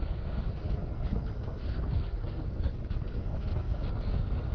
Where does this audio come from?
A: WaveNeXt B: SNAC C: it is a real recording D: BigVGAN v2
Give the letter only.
B